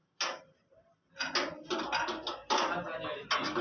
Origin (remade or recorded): recorded